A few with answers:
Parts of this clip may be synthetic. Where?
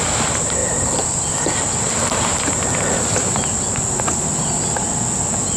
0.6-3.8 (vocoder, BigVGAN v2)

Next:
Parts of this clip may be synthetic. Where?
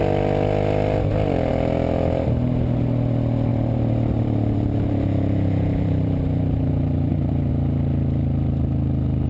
3.5-7.5 (vocoder, BigVGAN v2)